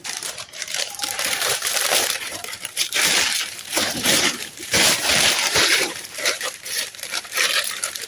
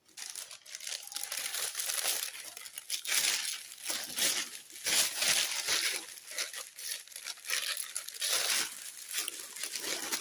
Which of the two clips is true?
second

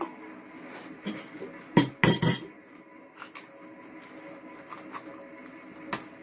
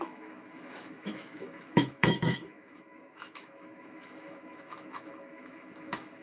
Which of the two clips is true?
first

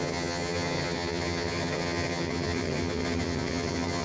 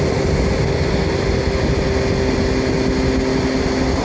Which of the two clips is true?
second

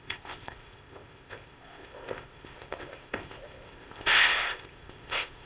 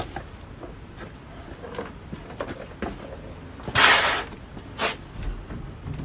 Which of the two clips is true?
second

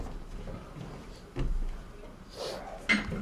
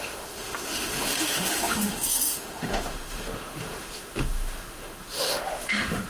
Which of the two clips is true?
first